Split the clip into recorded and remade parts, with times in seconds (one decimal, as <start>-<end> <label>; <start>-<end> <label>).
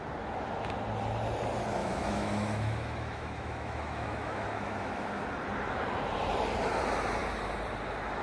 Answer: 0.0-1.8 recorded; 1.8-5.2 remade; 5.2-8.2 recorded